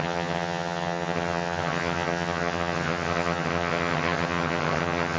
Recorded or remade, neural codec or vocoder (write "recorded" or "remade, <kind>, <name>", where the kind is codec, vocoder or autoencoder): remade, vocoder, HiFi-GAN